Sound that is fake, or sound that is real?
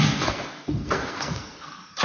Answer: fake